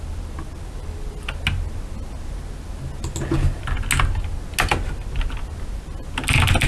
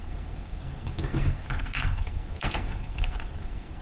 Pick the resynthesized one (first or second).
second